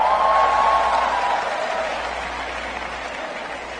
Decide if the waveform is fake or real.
real